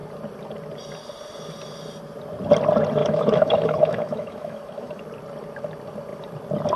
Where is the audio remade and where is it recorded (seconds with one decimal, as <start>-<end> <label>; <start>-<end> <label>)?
0.0-3.0 recorded; 3.0-5.0 remade; 5.0-6.8 recorded